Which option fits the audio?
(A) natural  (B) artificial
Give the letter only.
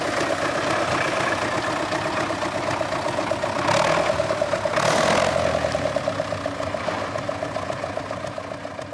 A